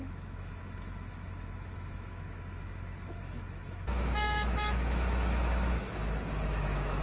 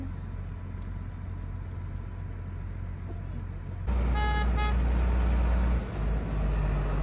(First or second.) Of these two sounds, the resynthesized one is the first